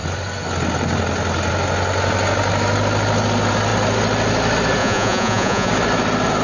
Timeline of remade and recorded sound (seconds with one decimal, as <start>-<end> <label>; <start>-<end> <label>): 0.0-4.8 recorded; 4.8-5.7 remade; 5.7-6.4 recorded